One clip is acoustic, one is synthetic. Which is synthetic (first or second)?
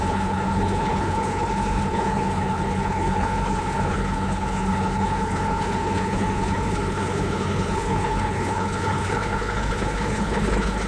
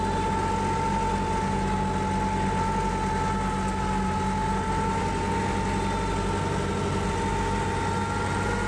first